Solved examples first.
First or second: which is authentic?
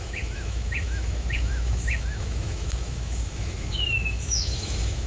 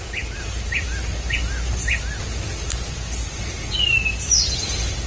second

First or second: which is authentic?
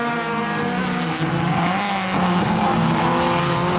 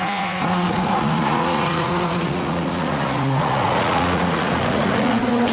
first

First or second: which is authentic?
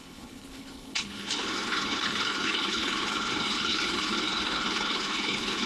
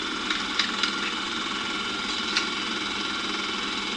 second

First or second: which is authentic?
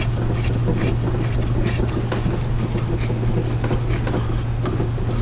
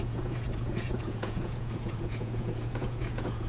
first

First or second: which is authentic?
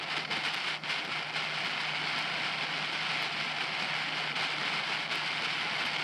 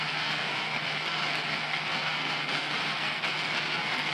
first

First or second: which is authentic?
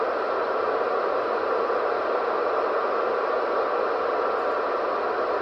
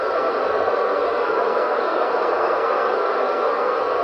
first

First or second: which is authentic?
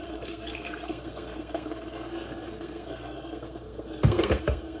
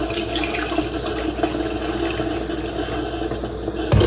second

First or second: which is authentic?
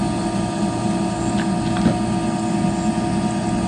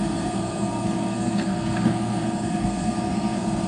first